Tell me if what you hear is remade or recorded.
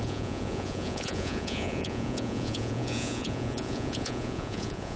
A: remade